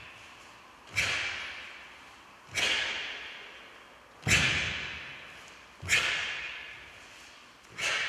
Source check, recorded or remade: recorded